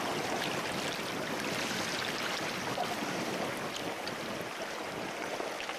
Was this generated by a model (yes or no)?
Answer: no